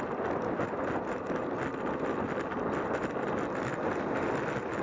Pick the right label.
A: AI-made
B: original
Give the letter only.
B